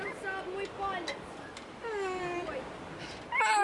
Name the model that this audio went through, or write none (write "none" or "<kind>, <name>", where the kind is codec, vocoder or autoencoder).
none